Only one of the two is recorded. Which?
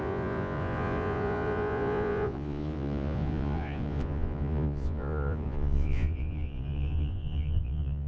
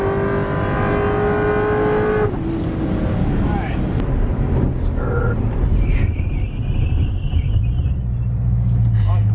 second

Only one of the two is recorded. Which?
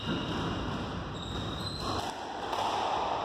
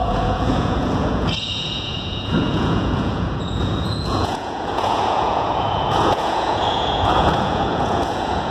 first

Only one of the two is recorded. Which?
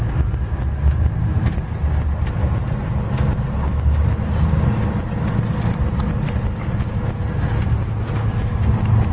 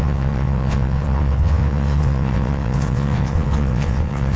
first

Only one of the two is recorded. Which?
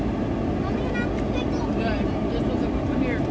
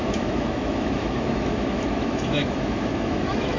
first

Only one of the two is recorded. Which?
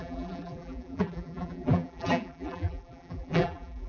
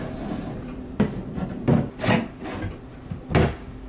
second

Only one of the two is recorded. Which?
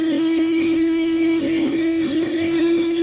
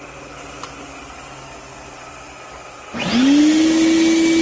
second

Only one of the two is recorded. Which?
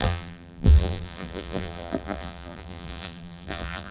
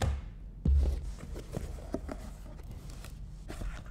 second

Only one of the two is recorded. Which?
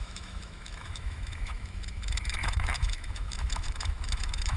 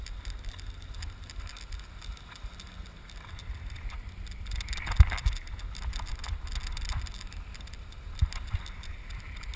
second